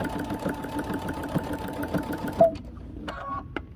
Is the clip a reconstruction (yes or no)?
yes